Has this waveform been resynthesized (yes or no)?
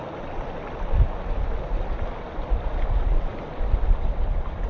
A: no